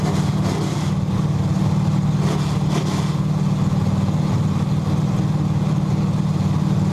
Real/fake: real